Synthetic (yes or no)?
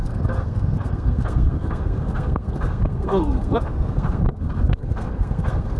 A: yes